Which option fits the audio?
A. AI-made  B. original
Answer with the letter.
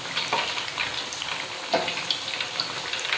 B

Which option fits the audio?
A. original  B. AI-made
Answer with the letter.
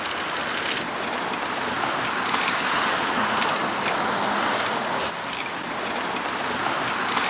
A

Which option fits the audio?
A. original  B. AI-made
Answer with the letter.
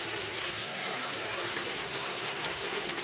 B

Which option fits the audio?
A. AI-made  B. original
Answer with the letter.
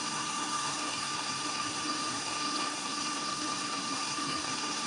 A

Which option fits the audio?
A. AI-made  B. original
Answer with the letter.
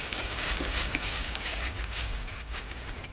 A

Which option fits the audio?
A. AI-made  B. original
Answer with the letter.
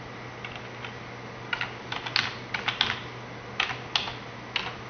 B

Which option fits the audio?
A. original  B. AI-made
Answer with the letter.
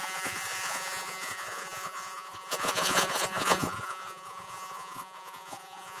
B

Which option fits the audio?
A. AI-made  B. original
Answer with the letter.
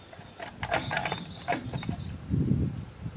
B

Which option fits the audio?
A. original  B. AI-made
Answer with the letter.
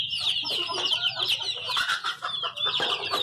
B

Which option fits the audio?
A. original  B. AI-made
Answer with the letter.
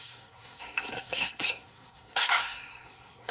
B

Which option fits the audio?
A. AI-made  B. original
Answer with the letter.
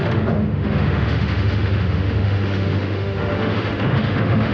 A